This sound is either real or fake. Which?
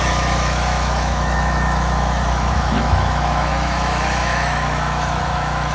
fake